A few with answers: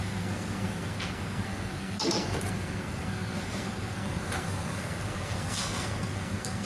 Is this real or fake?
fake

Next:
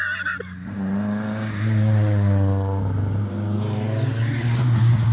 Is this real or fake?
real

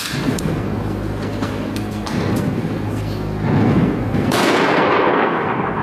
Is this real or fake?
fake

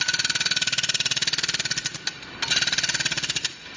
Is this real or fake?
real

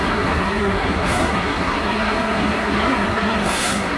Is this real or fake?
fake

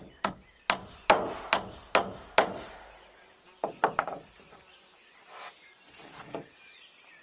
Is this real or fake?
real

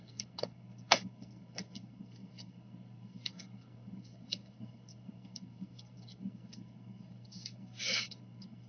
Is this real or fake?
fake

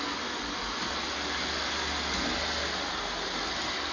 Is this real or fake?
real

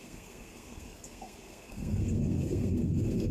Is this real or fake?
fake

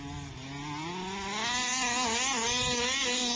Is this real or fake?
real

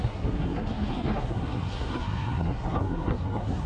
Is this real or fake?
fake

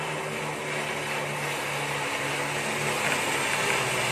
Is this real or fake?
real